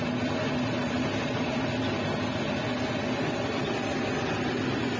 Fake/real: real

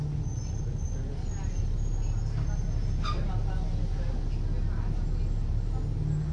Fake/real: real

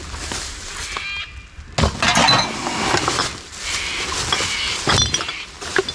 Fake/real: real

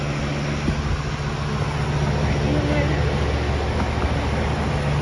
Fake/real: real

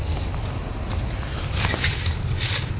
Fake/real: real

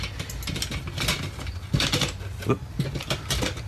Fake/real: real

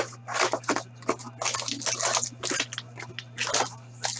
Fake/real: real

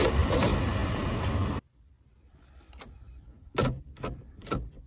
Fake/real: fake